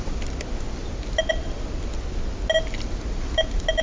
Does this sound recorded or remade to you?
recorded